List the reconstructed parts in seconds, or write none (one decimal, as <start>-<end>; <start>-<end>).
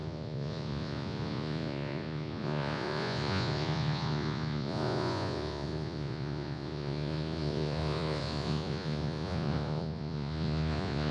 0.0-11.1